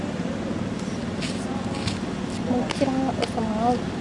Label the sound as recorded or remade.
recorded